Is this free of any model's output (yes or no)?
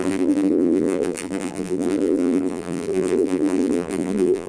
no